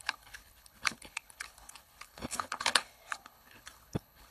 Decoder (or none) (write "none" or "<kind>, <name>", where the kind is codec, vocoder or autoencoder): codec, HILCodec